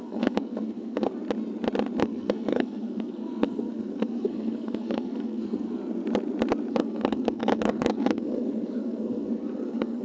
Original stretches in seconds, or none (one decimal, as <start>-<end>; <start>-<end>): 1.1-2.0; 5.8-6.7